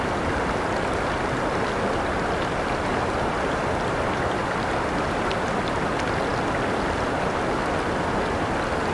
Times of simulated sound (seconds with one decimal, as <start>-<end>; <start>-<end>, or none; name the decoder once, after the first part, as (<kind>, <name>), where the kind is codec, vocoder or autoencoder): none